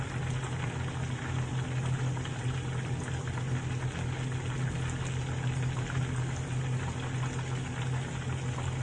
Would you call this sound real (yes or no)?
yes